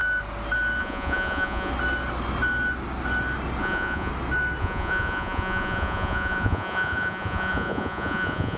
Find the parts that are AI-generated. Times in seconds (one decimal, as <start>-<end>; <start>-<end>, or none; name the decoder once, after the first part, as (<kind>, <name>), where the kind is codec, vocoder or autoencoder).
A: 0.8-1.7 (vocoder, Vocos); 3.6-4.1; 4.6-8.6